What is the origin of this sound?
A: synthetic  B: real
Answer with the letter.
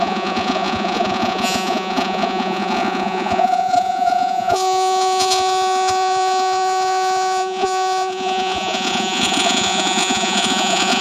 A